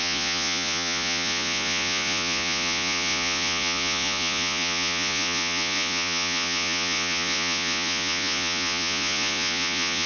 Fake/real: fake